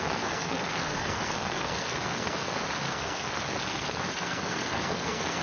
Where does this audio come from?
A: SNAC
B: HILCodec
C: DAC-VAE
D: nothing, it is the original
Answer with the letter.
A